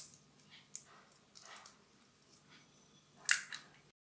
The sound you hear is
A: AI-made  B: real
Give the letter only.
B